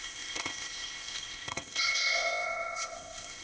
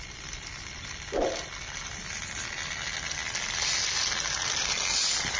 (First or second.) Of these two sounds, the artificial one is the first